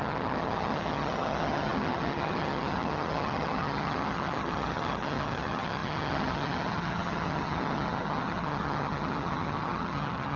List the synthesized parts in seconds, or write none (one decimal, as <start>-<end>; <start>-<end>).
0.0-10.4